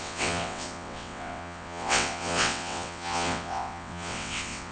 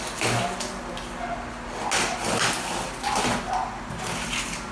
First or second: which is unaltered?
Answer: second